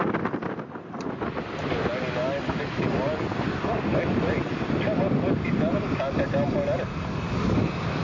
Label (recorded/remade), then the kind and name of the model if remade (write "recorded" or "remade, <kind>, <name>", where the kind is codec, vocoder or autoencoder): recorded